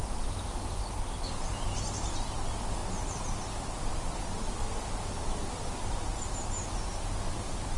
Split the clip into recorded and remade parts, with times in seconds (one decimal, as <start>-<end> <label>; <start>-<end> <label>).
0.0-7.8 recorded